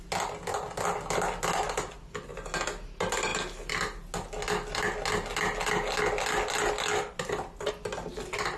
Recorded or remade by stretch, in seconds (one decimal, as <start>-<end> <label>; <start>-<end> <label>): 0.0-8.6 recorded